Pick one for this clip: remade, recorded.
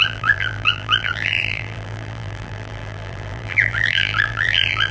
remade